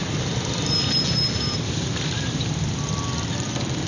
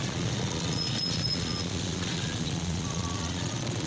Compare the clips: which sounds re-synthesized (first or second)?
second